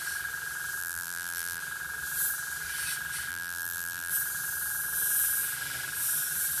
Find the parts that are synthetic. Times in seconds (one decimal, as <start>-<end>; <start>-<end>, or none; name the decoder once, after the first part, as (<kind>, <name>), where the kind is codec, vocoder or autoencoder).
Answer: 0.8-1.6 (vocoder, BigVGAN v2); 3.3-4.1